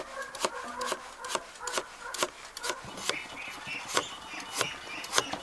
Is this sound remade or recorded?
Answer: recorded